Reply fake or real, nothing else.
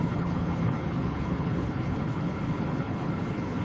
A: fake